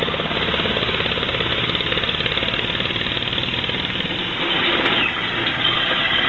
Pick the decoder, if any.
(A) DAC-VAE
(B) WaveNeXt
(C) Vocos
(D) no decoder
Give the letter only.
D